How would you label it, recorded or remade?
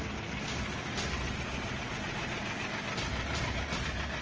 recorded